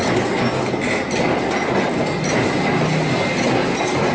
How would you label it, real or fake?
real